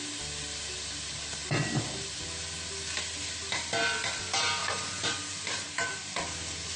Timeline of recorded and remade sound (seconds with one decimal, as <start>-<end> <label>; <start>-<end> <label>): 0.0-6.8 remade